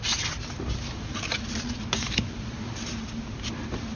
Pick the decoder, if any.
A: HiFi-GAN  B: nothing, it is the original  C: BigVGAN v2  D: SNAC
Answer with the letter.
B